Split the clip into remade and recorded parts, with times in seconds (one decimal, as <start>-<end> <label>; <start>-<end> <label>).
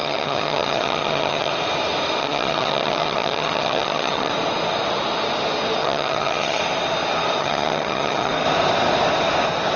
0.0-1.5 remade; 1.5-2.2 recorded; 2.2-4.3 remade; 4.3-5.8 recorded; 5.8-6.6 remade; 6.6-7.4 recorded; 7.4-8.3 remade; 8.3-9.8 recorded